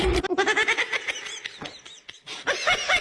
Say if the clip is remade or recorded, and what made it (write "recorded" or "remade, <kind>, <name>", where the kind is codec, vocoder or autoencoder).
recorded